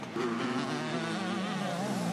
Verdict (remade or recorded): recorded